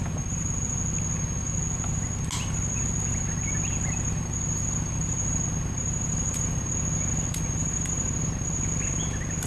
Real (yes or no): yes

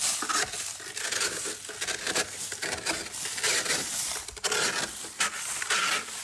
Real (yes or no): yes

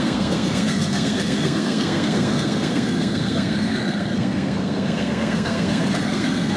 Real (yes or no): no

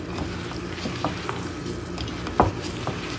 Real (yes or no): yes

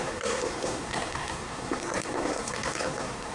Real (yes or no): no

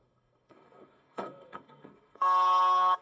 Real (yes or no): no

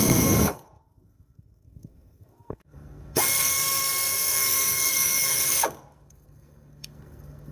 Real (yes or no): no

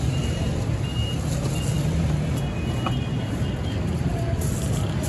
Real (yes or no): yes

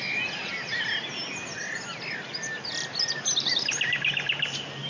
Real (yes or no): yes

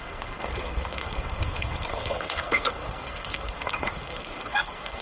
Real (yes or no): no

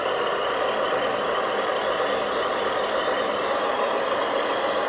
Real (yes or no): yes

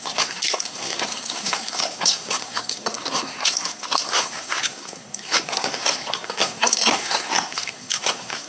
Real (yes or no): no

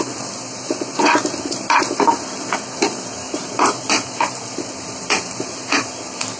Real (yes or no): yes